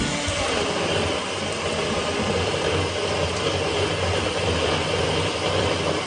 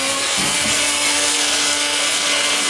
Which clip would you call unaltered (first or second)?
first